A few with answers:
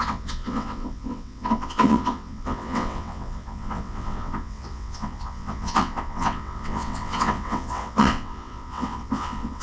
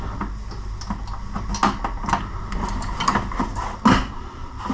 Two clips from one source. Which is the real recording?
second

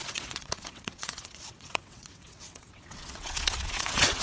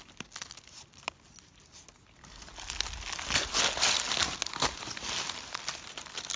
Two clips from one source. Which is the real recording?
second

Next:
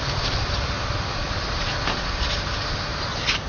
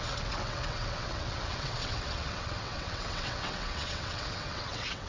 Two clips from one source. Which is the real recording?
first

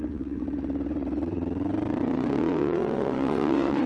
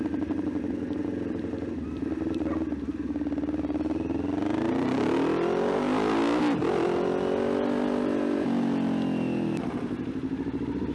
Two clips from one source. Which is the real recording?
second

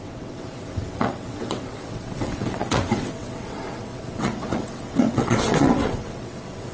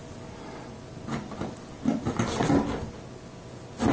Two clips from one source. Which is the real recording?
second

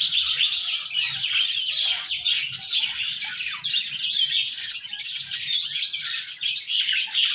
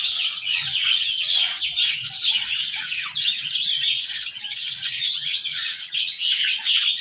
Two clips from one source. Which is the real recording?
first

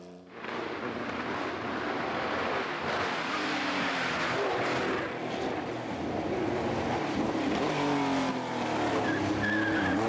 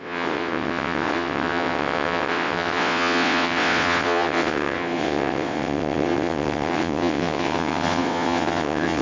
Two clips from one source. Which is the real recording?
first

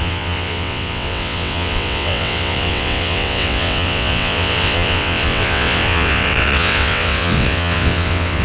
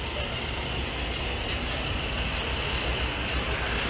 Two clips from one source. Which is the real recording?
second